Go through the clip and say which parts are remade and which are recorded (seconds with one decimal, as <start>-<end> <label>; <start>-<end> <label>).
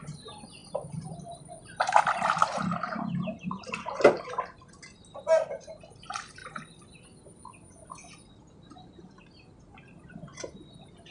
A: 0.0-0.6 recorded; 0.6-1.5 remade; 1.5-2.4 recorded; 2.4-4.4 remade; 4.4-11.1 recorded